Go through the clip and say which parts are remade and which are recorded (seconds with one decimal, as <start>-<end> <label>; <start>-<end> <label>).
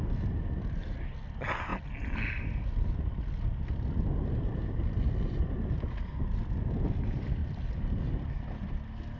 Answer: 0.0-9.2 recorded